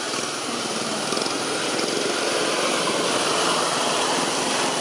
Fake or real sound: real